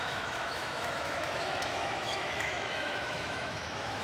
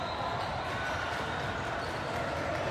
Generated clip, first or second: first